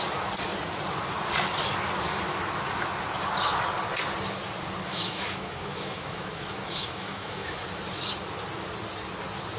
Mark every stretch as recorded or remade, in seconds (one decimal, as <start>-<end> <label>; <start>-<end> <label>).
0.0-4.9 recorded; 4.9-7.6 remade; 7.6-9.6 recorded